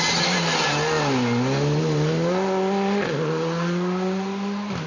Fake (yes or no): no